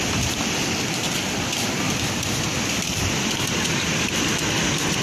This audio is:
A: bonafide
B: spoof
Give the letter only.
A